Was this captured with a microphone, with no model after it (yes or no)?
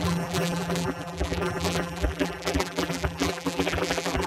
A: no